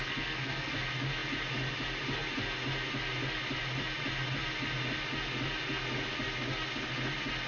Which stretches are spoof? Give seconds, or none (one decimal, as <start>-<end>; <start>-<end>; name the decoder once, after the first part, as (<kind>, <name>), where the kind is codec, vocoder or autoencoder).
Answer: 0.0-0.7 (codec, SNAC)